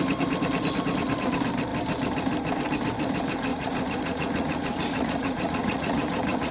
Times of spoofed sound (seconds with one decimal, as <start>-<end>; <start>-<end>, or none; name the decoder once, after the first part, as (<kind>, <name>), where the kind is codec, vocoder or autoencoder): 3.5-6.5 (vocoder, Vocos)